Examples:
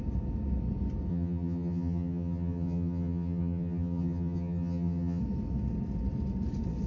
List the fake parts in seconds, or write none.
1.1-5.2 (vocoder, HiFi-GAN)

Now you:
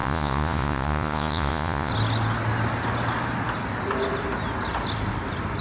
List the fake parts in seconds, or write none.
0.0-1.9 (vocoder, Vocos)

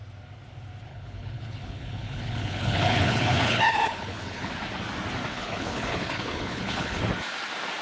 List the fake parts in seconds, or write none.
0.9-4.5 (codec, HILCodec); 5.3-7.0

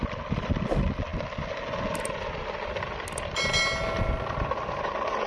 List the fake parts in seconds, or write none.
none

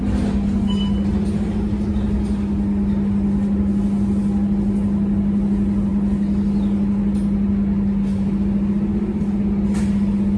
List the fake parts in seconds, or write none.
none

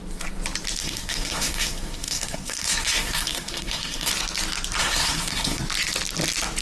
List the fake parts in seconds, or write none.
0.8-4.1 (codec, SNAC); 4.8-5.6

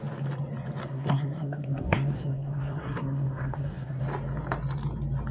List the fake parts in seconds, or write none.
0.8-4.0 (codec, SNAC)